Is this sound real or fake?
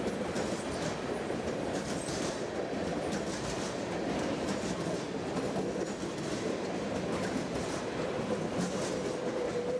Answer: real